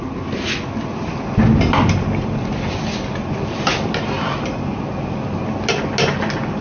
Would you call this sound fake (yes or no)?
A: no